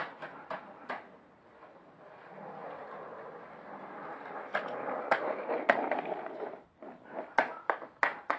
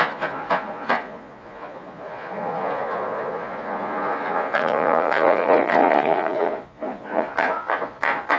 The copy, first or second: second